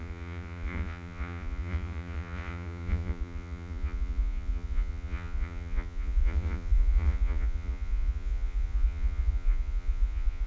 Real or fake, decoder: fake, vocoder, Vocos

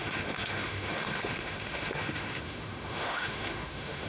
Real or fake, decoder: fake, autoencoder, DAC-VAE